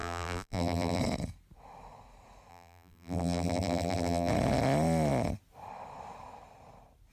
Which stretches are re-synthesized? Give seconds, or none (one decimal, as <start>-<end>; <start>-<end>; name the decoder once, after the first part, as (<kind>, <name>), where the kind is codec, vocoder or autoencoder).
0.0-1.0 (vocoder, BigVGAN v2); 2.5-4.3